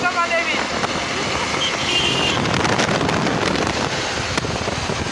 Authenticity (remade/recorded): recorded